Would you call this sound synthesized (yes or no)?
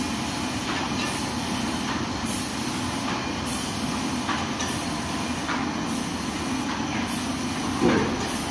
no